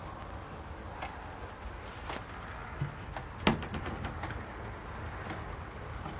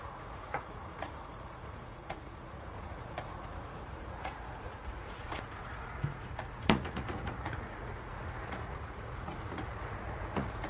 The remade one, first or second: second